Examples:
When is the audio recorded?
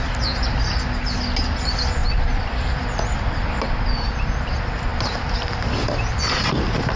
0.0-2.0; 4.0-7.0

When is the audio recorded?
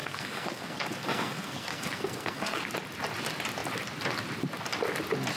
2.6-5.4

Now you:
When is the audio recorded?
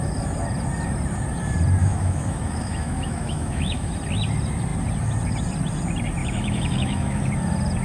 0.0-1.8; 3.9-6.2; 7.2-7.8